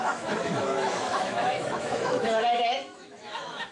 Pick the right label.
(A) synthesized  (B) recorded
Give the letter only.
A